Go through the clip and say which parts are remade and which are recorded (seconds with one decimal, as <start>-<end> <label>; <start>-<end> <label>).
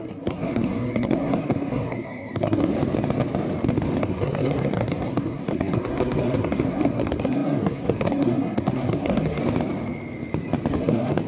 0.0-2.7 remade; 2.7-4.0 recorded; 4.0-9.4 remade; 9.4-10.7 recorded; 10.7-11.3 remade